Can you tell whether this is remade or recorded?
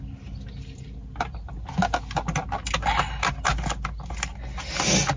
recorded